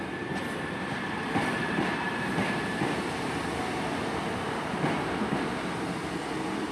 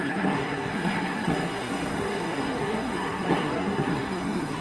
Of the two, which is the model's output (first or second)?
second